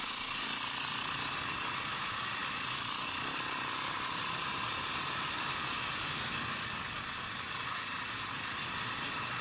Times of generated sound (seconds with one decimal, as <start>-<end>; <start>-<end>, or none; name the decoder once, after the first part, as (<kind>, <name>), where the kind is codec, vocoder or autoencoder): none